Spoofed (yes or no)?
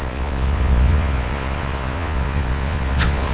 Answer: yes